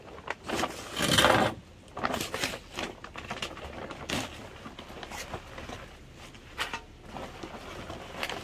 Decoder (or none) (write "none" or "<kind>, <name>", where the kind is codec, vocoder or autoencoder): none